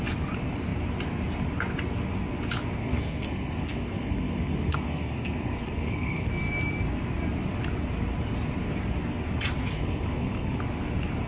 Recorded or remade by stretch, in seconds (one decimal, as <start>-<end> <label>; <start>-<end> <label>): 0.0-2.8 recorded; 2.8-6.3 remade; 6.3-9.7 recorded; 9.7-10.6 remade; 10.6-11.3 recorded